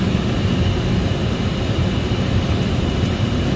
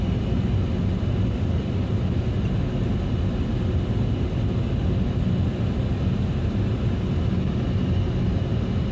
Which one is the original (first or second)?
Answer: second